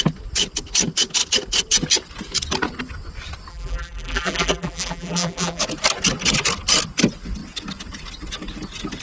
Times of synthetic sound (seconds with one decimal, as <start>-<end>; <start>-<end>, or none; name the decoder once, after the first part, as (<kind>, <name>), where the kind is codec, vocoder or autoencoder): 3.5-5.6 (vocoder, BigVGAN v2)